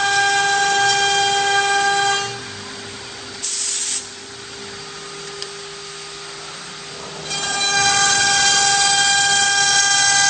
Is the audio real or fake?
real